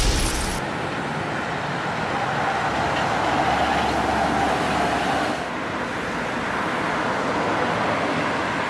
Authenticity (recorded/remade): recorded